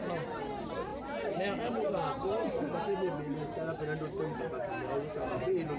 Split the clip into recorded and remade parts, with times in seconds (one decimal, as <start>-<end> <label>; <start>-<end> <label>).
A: 0.0-5.8 recorded